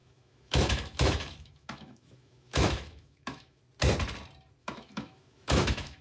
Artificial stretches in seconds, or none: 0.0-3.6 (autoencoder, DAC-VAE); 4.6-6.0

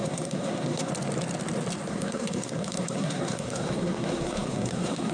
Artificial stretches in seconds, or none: 0.0-0.9 (codec, SNAC); 1.9-5.1

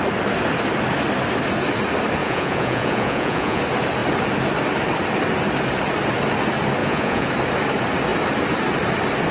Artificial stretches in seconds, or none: 2.2-3.6 (vocoder, Vocos); 6.8-7.3

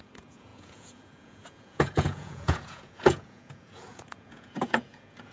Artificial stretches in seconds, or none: 0.0-5.3 (vocoder, Vocos)